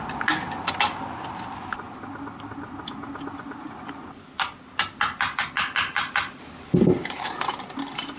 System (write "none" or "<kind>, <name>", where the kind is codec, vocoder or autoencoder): none